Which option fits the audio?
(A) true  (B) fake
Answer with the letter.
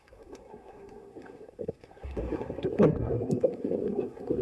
B